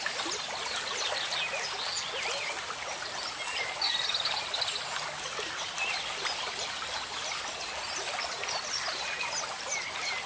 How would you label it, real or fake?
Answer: real